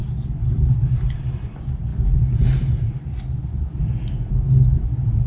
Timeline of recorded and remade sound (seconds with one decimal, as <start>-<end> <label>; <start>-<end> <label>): 0.0-5.3 recorded